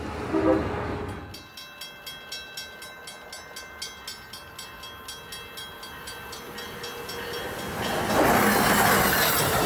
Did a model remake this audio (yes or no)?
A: no